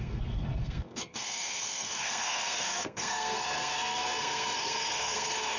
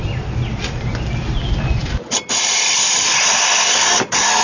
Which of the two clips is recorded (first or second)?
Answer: second